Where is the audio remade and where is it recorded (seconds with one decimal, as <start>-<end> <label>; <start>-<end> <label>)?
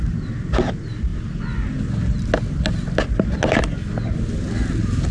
0.0-5.1 recorded